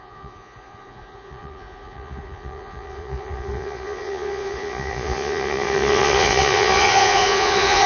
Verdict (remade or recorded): remade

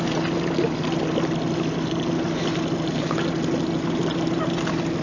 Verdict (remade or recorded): recorded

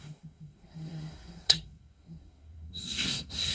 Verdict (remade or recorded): remade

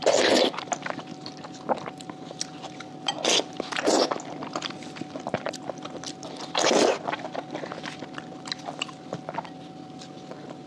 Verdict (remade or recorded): recorded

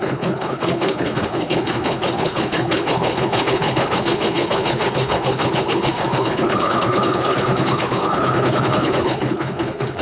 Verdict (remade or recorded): remade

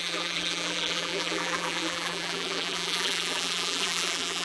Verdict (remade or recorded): remade